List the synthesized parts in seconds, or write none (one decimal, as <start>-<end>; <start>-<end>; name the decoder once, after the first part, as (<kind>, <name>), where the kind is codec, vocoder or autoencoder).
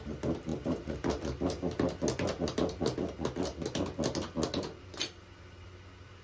0.5-1.1 (vocoder, BigVGAN v2)